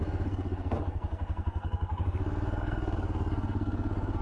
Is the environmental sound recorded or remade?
remade